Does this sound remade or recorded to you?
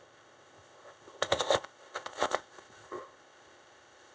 remade